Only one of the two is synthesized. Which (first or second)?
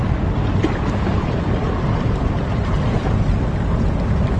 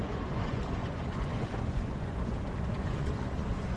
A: second